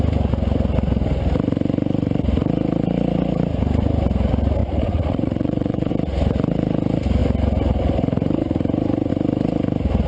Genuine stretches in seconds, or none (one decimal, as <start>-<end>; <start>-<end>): 0.0-4.6; 5.9-10.1